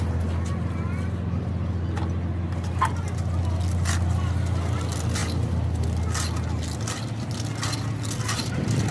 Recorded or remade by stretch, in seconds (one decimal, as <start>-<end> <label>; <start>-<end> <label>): 0.0-8.9 recorded